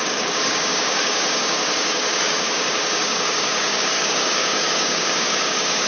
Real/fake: fake